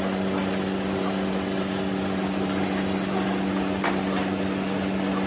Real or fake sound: real